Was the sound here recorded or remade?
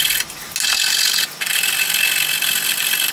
recorded